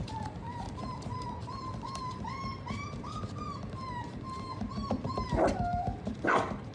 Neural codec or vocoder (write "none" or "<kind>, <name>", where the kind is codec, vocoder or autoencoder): vocoder, BigVGAN v2